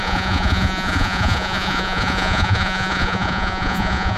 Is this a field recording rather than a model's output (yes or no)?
no